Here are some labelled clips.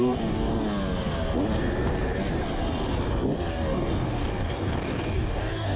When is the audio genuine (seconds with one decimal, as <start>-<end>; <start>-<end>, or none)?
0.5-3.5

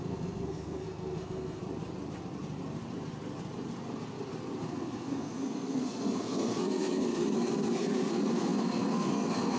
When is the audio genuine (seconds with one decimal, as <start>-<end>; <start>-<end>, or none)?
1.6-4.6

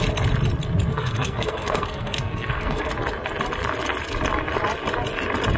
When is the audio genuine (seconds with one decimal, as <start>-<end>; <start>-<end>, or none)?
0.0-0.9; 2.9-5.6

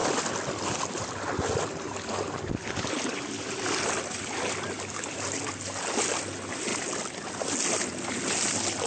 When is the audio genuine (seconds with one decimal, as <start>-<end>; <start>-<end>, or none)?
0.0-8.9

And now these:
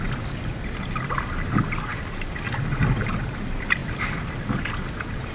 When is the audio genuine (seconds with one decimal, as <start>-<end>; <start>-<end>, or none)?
0.0-5.3

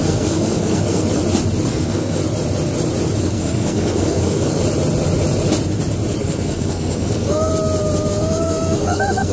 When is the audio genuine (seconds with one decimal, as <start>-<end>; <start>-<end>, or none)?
1.2-1.7; 2.2-3.2; 4.6-6.2; 7.5-8.1

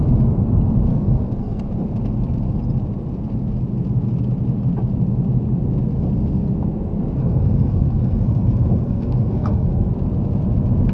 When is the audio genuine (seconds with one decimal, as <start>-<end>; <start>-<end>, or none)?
0.0-0.9; 1.6-7.2; 9.9-10.9